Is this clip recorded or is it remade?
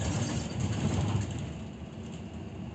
recorded